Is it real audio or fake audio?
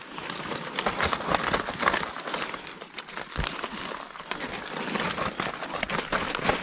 real